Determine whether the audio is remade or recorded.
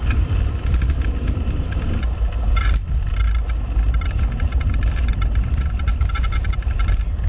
remade